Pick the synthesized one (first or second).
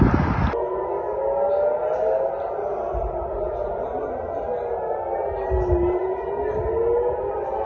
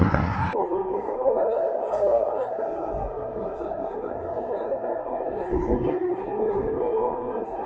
second